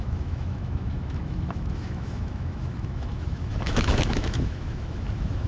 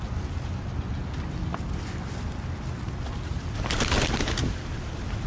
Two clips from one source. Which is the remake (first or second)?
first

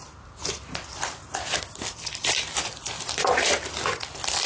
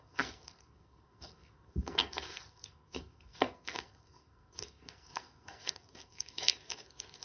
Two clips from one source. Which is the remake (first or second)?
second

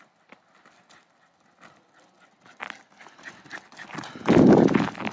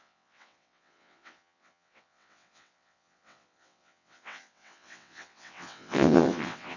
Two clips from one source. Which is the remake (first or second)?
second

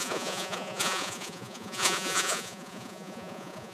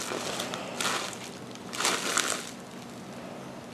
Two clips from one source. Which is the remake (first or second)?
first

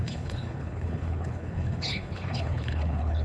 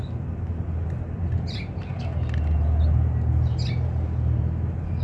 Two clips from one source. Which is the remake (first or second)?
first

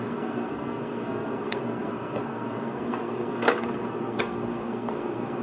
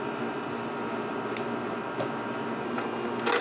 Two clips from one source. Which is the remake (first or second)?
first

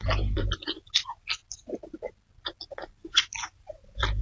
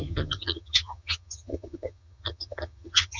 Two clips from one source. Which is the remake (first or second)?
second